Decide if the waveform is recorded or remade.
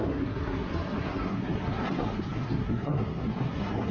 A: remade